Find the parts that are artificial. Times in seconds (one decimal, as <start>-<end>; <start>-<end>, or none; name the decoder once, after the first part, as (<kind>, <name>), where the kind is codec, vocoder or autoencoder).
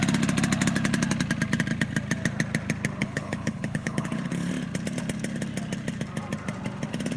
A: 3.0-4.5 (codec, HILCodec)